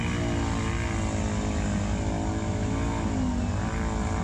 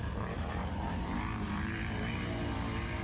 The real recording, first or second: first